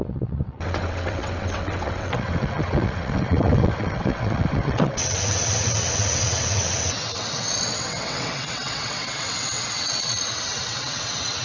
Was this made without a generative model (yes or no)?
no